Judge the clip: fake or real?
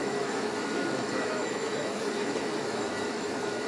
fake